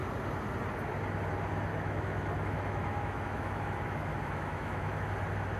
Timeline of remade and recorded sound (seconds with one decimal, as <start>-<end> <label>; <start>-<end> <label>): 0.0-1.7 recorded; 1.7-5.1 remade; 5.1-5.6 recorded